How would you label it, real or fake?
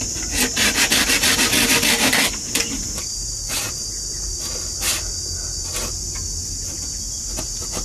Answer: real